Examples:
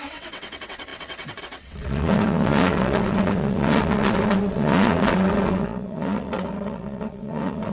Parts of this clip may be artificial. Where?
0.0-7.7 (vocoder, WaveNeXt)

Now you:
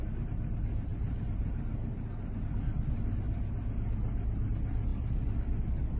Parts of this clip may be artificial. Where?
4.9-5.6 (vocoder, BigVGAN v2)

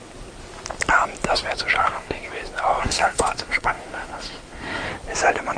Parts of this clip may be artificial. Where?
1.8-2.3 (codec, SNAC); 2.8-4.9

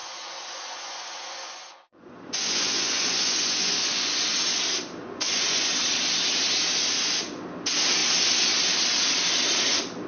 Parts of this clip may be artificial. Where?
0.0-4.2 (vocoder, Vocos); 5.0-5.7

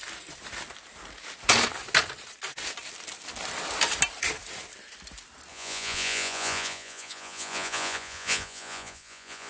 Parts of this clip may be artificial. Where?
5.5-9.5 (vocoder, Vocos)

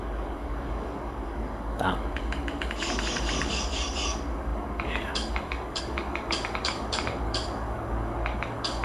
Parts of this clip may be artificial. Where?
0.0-8.8 (codec, DAC)

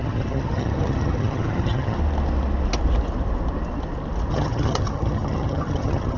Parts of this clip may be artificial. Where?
0.0-2.0 (vocoder, HiFi-GAN); 4.3-6.2